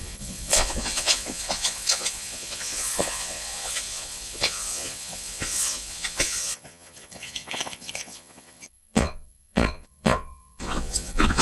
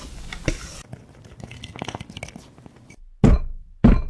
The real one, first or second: second